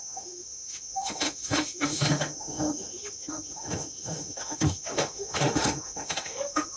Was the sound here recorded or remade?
remade